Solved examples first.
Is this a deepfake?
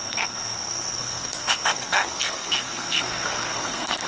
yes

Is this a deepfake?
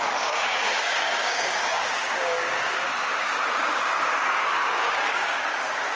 yes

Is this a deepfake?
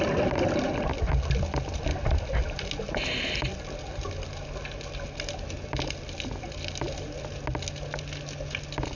no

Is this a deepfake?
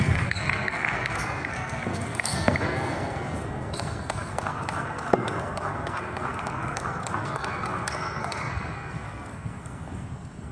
yes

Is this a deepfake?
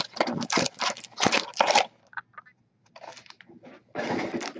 no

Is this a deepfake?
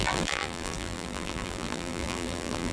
yes